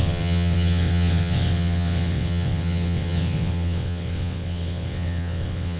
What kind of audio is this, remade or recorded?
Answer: remade